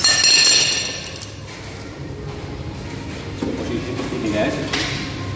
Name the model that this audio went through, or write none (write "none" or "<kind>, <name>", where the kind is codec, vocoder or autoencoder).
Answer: none